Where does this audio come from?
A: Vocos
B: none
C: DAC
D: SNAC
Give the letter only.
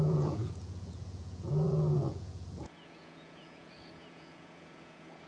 A